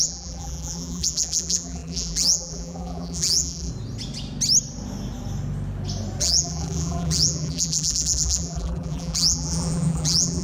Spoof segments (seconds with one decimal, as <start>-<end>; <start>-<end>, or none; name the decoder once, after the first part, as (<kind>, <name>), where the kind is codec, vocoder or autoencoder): 0.0-3.7 (vocoder, BigVGAN v2); 6.2-10.4